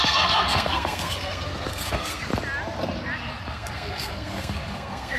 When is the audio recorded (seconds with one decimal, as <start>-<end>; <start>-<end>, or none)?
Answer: 2.3-3.5